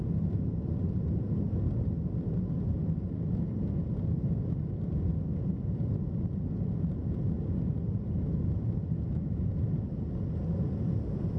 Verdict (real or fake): real